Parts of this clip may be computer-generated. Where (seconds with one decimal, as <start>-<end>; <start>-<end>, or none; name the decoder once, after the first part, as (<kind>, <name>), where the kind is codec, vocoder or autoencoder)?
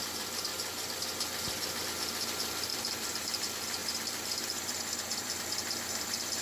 0.0-0.5 (vocoder, BigVGAN v2); 1.8-6.4